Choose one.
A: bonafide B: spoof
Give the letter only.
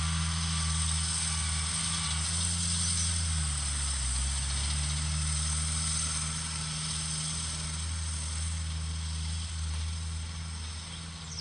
A